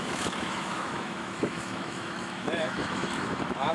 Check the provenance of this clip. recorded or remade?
remade